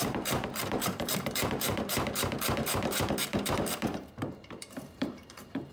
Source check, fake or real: fake